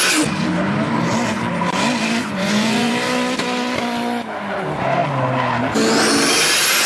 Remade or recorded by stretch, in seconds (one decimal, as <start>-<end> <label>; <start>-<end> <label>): 0.0-2.2 recorded; 2.2-2.9 remade; 2.9-6.9 recorded